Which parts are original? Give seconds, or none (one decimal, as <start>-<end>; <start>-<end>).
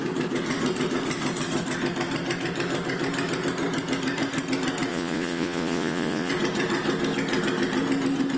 0.0-4.9; 6.3-8.4